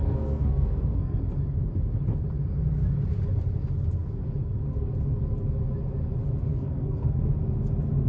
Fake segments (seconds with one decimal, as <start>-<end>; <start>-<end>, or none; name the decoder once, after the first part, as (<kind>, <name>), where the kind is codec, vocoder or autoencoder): 0.0-1.2 (codec, SNAC); 6.5-7.3